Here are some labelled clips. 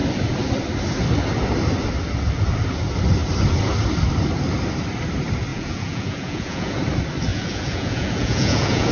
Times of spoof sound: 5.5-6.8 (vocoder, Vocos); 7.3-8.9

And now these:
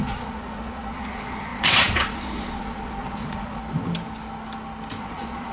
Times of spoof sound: 0.0-3.6 (vocoder, Vocos); 5.0-5.5

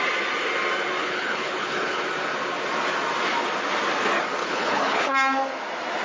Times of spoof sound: 1.0-2.0 (codec, HILCodec); 4.4-5.1